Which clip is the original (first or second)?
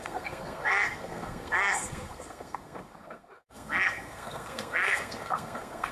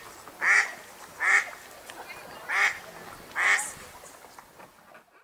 second